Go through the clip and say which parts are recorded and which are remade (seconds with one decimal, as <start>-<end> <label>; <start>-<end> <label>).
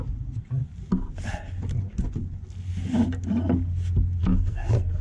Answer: 0.0-4.2 recorded; 4.2-5.0 remade